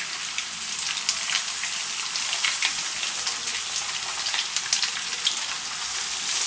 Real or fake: real